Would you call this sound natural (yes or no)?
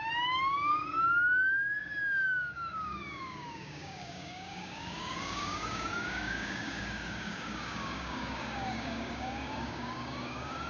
no